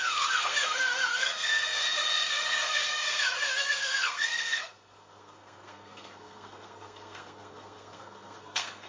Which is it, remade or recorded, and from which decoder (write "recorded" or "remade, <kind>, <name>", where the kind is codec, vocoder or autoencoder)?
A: remade, codec, SNAC